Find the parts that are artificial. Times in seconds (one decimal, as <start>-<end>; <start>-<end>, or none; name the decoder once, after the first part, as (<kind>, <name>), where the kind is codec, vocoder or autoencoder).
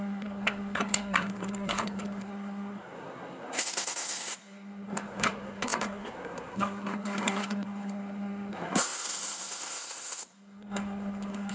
0.0-11.5 (codec, SNAC)